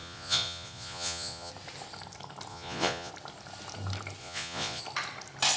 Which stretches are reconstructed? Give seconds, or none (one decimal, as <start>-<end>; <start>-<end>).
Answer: 0.0-1.5; 2.5-3.1; 4.2-4.8